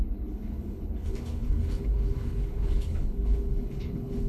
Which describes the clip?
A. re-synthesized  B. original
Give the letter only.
A